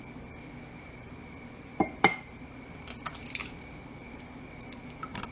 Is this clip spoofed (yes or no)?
no